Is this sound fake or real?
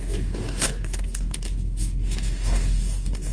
fake